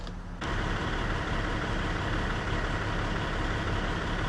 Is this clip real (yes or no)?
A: yes